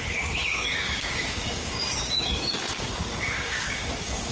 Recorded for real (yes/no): no